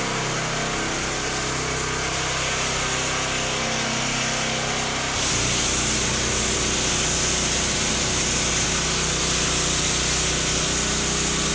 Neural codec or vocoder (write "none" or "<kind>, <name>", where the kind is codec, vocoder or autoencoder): none